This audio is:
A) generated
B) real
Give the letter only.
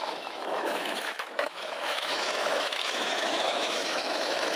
A